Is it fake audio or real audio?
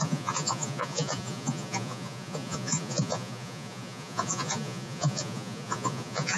fake